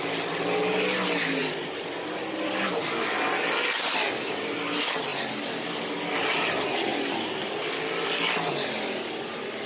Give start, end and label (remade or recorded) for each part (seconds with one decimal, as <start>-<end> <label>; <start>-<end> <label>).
0.0-9.7 recorded